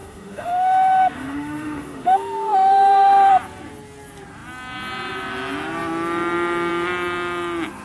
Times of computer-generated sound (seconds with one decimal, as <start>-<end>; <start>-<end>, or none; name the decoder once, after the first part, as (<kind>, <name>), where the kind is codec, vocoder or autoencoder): 0.0-3.3 (autoencoder, DAC-VAE)